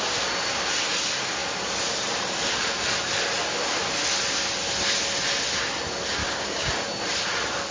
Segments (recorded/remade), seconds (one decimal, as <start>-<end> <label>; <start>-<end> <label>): 0.0-6.2 recorded; 6.2-6.7 remade; 6.7-7.7 recorded